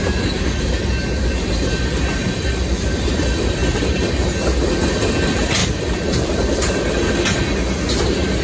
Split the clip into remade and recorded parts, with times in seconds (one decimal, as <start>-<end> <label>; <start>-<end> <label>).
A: 0.0-2.2 recorded; 2.2-3.1 remade; 3.1-3.6 recorded; 3.6-4.1 remade; 4.1-5.6 recorded; 5.6-6.7 remade; 6.7-8.4 recorded